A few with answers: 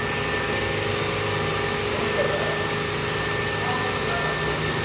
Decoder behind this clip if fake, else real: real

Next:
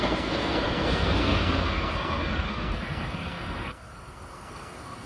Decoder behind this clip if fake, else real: fake, codec, SNAC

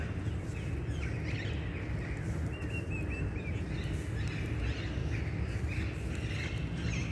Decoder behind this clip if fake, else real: real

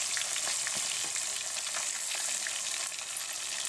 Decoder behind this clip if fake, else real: real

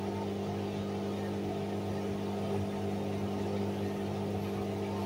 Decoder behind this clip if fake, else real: real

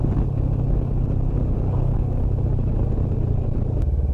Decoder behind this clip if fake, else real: real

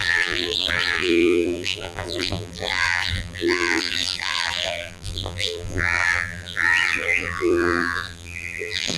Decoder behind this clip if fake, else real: fake, vocoder, BigVGAN v2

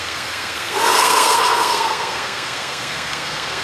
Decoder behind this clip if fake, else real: fake, codec, SNAC